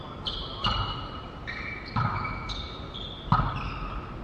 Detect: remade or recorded recorded